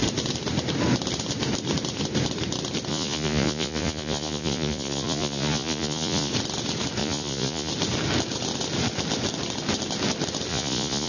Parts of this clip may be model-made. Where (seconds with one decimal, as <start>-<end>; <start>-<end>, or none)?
2.9-6.3; 7.0-7.7; 10.5-11.1